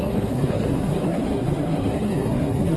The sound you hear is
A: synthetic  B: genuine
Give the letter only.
A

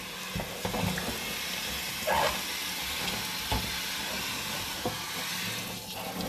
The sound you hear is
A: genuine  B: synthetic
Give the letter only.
A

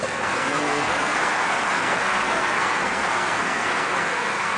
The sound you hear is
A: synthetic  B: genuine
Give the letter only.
A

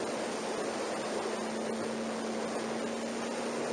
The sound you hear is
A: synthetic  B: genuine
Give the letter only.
B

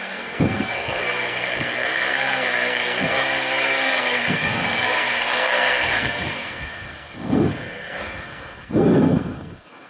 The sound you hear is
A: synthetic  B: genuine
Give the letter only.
A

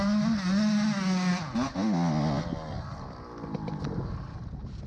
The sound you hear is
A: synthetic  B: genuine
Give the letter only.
B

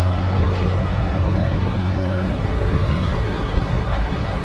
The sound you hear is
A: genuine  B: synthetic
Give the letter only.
B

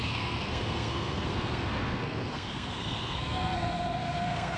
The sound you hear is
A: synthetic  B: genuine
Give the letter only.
A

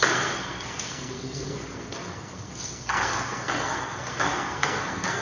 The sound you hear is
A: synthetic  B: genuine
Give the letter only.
A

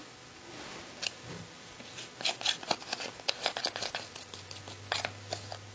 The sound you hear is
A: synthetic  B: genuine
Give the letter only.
B